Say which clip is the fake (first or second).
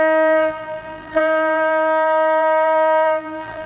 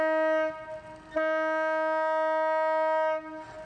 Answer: first